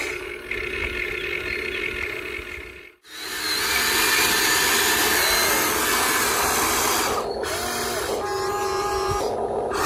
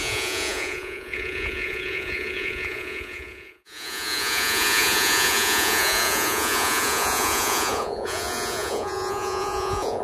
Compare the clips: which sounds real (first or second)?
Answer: first